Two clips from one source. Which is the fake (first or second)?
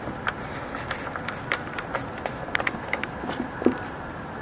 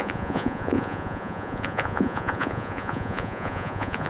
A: second